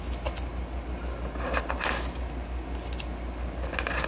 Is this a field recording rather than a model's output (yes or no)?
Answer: yes